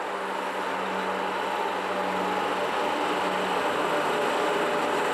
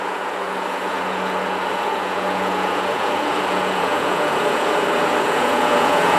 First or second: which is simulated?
second